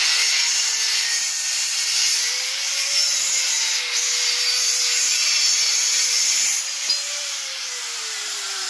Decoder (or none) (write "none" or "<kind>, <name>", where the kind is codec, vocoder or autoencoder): vocoder, BigVGAN v2